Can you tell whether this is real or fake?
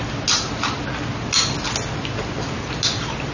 real